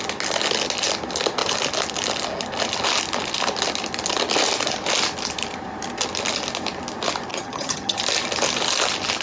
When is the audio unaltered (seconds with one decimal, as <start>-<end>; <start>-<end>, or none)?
0.0-7.3; 8.0-9.2